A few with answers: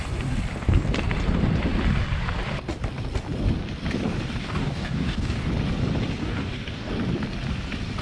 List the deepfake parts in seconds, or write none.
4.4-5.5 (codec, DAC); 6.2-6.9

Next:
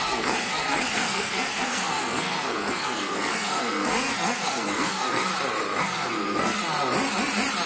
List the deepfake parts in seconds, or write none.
0.0-5.3 (codec, SNAC); 5.8-6.6

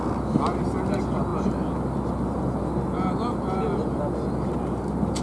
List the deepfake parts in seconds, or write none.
none

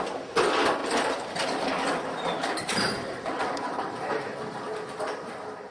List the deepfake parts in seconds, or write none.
0.8-4.2 (vocoder, BigVGAN v2)

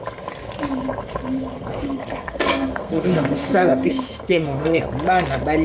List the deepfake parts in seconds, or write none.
1.4-4.8 (codec, SNAC)

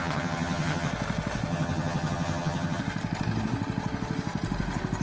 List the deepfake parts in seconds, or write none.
0.0-0.9 (vocoder, HiFi-GAN); 1.5-2.8